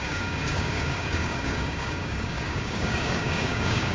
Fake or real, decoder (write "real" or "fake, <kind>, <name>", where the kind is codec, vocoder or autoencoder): fake, codec, DAC